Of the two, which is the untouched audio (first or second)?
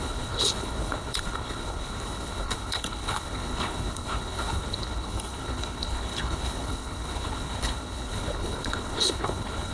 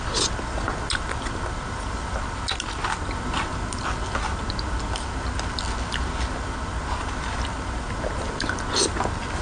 second